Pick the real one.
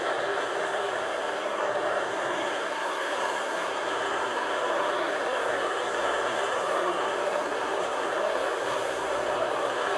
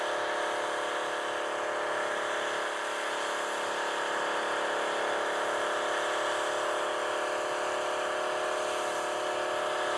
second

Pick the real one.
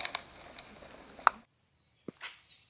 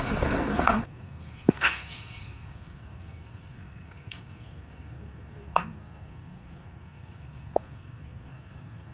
first